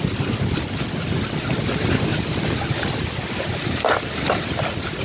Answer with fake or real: real